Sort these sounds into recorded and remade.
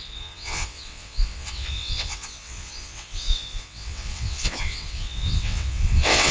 remade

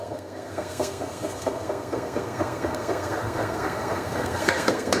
remade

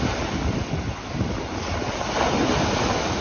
recorded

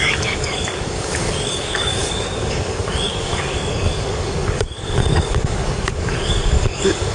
remade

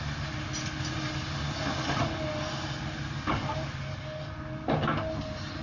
recorded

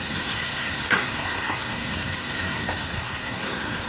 remade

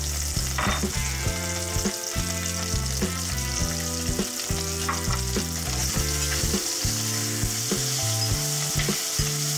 recorded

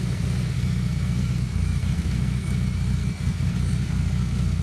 remade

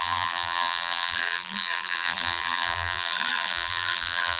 remade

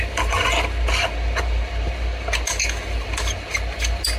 recorded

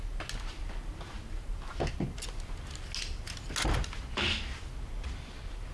recorded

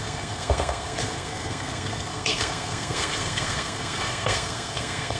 remade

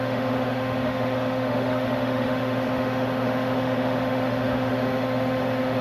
remade